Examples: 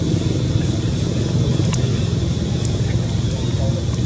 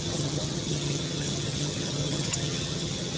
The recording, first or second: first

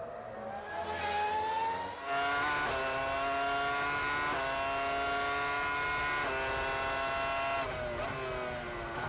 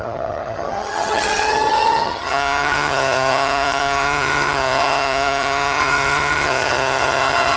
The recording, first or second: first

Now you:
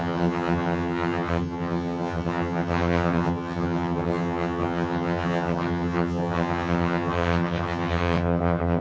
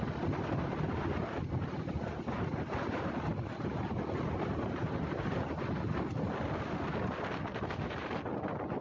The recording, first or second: second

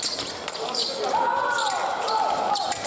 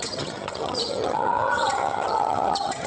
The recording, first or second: first